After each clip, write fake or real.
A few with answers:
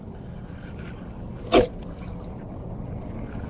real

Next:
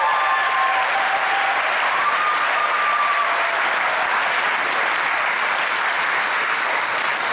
fake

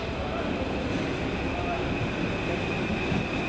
real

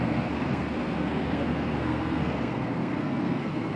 fake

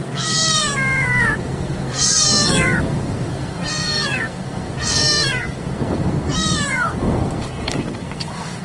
fake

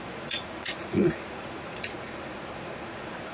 fake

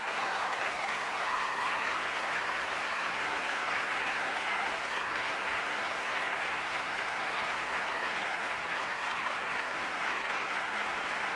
fake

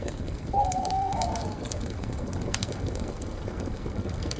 fake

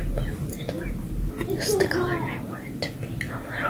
real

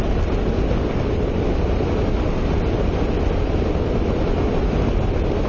real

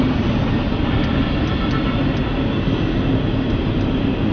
real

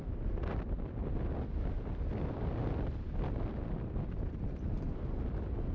real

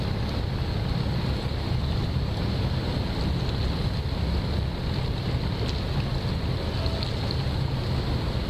real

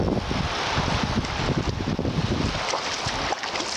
real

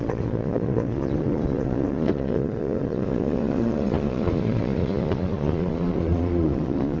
fake